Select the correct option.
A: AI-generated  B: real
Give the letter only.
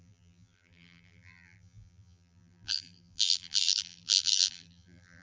A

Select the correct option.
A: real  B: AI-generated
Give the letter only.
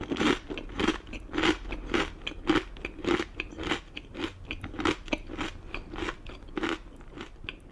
A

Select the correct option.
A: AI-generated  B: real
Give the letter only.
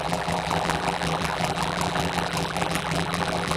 A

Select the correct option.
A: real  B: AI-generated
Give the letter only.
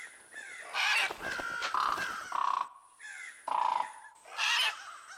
A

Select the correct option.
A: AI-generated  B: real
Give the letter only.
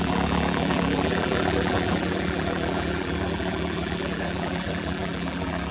A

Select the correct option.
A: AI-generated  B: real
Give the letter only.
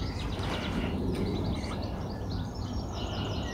A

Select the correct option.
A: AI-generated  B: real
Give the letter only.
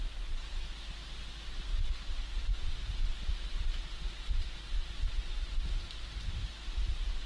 B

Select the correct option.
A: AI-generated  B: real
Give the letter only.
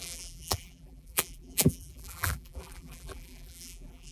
A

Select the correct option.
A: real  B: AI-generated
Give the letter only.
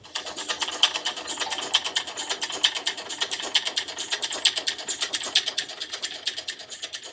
A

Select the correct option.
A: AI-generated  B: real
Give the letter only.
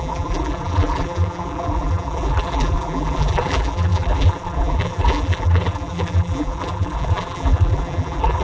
A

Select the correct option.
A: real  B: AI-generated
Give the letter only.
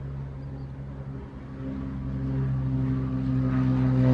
A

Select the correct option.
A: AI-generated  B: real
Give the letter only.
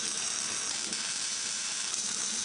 A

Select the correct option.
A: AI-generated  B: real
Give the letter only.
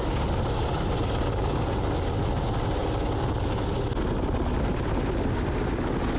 B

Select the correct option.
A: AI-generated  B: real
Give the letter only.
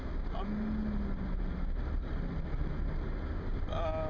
B